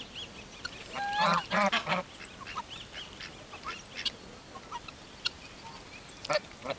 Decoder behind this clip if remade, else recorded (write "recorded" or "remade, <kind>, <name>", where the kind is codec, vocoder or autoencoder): recorded